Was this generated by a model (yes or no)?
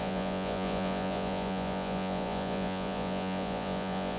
yes